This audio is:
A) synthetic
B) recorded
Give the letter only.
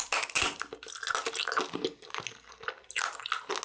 B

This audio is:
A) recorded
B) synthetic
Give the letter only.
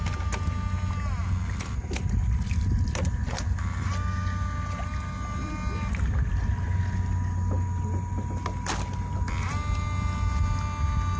A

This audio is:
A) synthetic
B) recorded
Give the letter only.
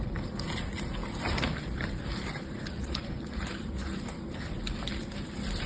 A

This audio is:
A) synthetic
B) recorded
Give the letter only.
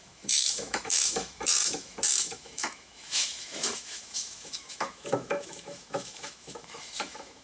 A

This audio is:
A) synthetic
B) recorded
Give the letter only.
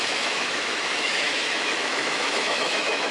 A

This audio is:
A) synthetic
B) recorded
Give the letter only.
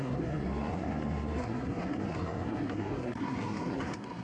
A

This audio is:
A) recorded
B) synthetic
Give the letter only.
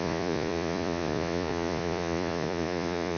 B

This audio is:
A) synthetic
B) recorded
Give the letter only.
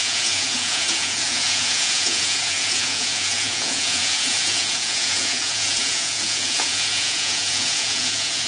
A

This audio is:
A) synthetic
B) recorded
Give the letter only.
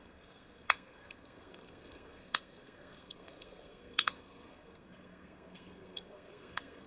A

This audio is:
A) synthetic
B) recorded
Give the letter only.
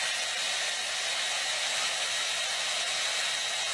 B